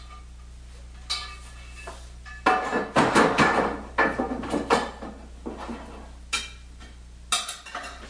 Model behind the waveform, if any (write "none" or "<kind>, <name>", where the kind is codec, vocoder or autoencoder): none